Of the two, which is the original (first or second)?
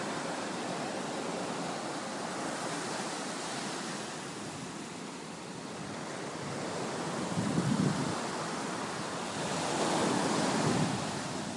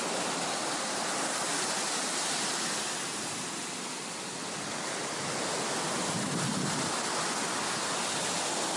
second